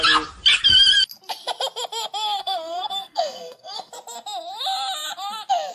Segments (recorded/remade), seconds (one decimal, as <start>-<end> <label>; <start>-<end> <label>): 0.0-2.4 recorded; 2.4-3.9 remade; 3.9-5.7 recorded